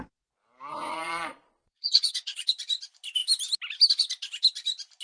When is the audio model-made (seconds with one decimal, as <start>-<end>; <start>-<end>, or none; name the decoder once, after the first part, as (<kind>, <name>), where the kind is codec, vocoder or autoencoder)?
0.7-2.5 (vocoder, Vocos)